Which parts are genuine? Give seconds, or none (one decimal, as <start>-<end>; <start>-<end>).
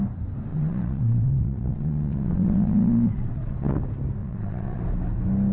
0.0-0.5; 3.8-4.2; 4.8-5.5